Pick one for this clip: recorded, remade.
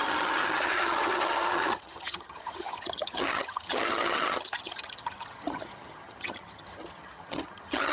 remade